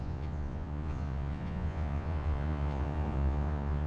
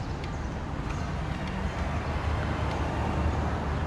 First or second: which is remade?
first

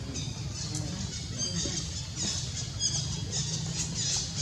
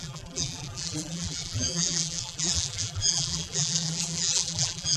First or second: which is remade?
second